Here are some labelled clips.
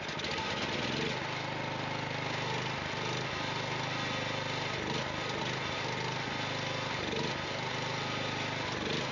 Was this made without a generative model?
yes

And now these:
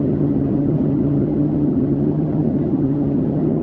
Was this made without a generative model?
no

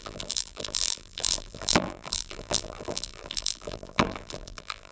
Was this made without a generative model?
no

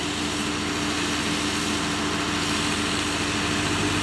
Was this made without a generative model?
yes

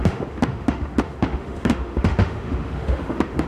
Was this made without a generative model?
no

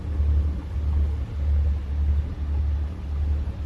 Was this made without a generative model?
yes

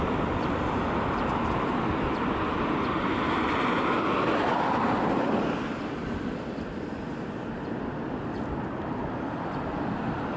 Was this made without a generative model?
yes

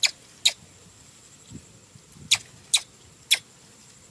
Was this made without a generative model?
yes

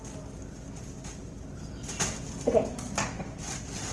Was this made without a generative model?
yes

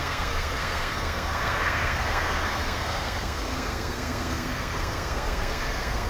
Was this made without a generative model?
no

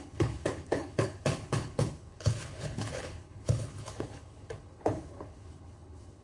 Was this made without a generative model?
no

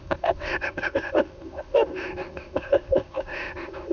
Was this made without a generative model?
no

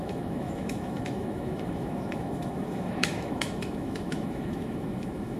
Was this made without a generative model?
no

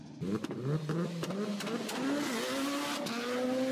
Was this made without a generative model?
yes